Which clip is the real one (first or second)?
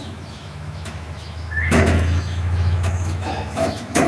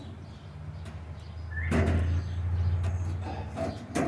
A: second